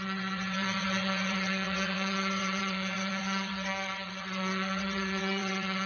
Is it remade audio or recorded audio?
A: remade